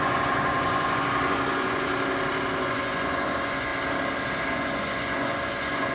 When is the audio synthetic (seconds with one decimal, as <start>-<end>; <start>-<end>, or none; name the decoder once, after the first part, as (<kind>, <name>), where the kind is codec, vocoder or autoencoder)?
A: 0.0-1.9 (vocoder, Vocos); 2.6-3.7; 4.5-5.9